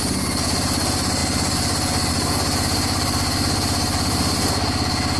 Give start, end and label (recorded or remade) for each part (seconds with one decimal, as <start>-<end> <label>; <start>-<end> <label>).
0.0-5.2 recorded